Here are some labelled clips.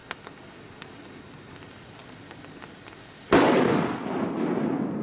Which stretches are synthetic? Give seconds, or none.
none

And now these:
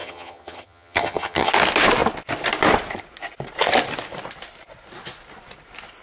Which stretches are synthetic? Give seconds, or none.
0.0-1.5 (vocoder, HiFi-GAN)

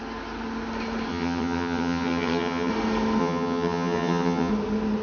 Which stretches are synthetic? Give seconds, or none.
1.1-2.7 (vocoder, HiFi-GAN); 3.2-4.5

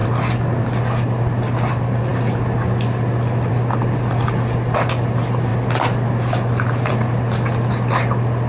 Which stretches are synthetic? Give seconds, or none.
none

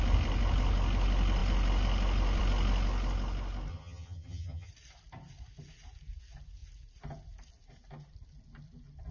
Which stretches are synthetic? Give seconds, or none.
3.7-4.7 (vocoder, HiFi-GAN)